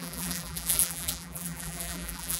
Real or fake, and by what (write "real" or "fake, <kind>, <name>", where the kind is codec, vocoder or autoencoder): fake, vocoder, BigVGAN v2